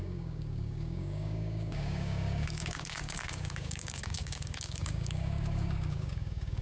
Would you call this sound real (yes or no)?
no